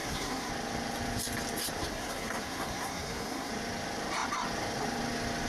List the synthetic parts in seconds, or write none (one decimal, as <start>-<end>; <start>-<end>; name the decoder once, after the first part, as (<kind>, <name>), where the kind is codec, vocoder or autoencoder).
0.0-0.5 (codec, SNAC); 1.9-3.5